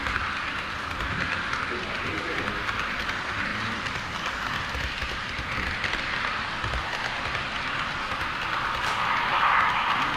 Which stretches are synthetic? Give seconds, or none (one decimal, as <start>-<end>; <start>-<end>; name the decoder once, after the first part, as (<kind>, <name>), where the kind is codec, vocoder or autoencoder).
none